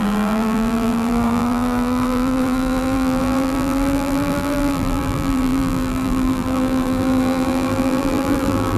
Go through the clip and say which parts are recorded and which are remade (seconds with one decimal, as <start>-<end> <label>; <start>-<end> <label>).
0.0-8.8 remade